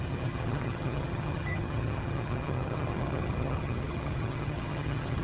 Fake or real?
fake